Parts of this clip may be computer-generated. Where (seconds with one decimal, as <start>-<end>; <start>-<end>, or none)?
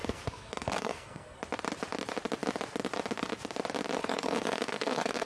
0.0-1.4; 4.0-5.3